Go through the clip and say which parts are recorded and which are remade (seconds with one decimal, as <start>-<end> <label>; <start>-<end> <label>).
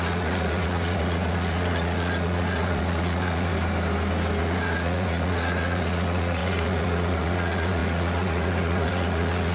0.0-3.5 remade; 3.5-4.4 recorded; 4.4-9.5 remade